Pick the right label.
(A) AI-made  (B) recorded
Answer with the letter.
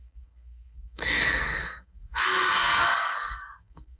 A